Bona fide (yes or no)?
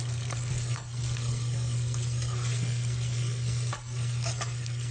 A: no